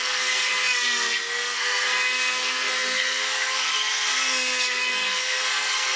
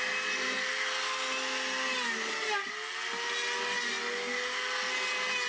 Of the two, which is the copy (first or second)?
first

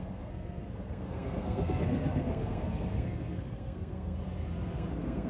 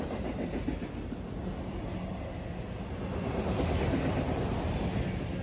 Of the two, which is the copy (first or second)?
first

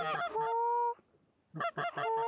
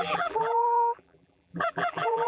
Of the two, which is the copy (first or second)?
second